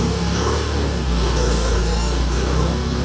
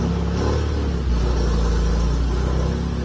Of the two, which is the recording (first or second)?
second